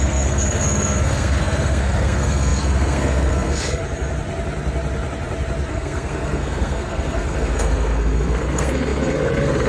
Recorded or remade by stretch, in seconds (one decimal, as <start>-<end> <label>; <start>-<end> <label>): 0.0-3.8 remade; 3.8-5.7 recorded; 5.7-9.7 remade